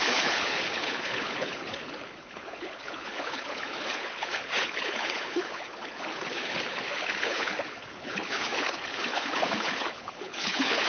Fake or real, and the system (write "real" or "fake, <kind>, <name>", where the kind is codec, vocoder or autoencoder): fake, codec, HILCodec